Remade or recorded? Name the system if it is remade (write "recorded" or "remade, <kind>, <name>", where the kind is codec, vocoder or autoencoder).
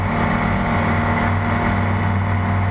recorded